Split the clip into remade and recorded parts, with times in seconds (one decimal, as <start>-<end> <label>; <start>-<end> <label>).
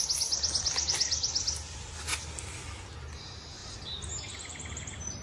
0.0-5.2 recorded